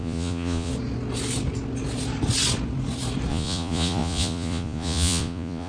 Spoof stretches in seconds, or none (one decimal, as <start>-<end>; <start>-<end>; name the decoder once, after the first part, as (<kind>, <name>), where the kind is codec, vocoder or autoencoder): 0.0-0.7 (vocoder, Vocos); 3.3-5.7